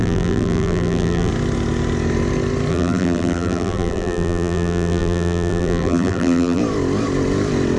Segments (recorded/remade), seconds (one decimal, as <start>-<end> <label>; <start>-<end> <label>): 0.0-1.3 remade; 1.3-2.7 recorded; 2.7-6.6 remade; 6.6-7.8 recorded